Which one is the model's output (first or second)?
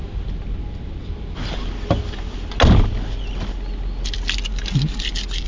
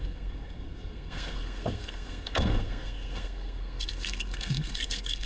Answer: second